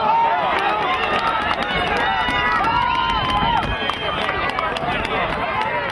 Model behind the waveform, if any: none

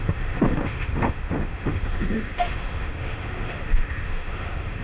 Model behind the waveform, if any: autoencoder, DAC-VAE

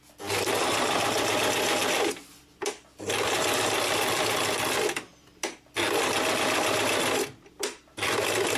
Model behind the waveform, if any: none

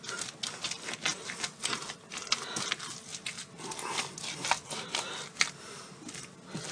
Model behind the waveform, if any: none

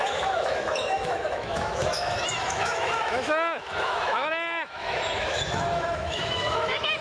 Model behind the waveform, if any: autoencoder, DAC-VAE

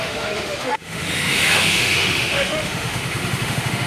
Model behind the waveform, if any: autoencoder, DAC-VAE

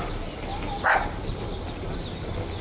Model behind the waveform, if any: none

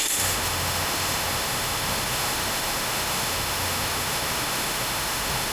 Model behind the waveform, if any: autoencoder, DAC-VAE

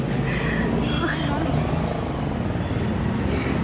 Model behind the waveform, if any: none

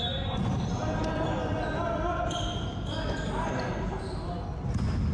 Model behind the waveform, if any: none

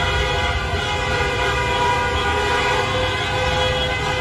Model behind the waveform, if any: none